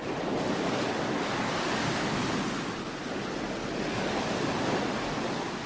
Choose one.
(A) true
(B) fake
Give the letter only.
A